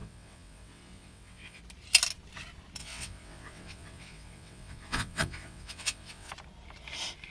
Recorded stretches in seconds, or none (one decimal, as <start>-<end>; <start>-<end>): 1.6-2.8; 6.3-7.3